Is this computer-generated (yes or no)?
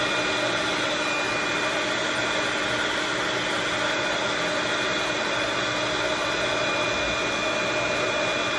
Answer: no